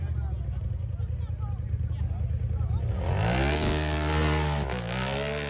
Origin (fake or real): real